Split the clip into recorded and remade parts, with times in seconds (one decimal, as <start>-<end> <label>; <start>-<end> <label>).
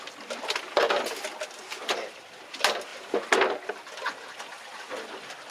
0.0-2.9 recorded; 2.9-3.7 remade; 3.7-5.5 recorded